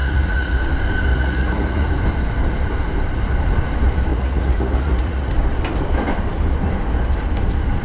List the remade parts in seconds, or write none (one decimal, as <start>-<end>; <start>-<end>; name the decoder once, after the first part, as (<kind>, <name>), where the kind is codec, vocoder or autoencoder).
0.0-0.6 (vocoder, Vocos); 1.1-1.9; 4.1-5.3